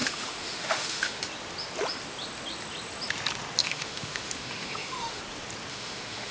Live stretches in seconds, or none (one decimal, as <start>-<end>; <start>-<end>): 1.2-3.6; 5.2-5.7